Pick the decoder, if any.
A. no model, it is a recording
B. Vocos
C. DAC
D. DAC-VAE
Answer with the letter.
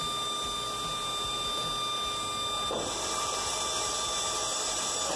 A